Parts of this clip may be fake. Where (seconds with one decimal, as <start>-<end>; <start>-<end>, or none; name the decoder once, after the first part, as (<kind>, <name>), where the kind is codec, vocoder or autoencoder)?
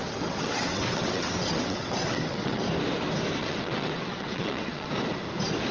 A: 0.0-2.6 (vocoder, WaveNeXt); 3.4-4.9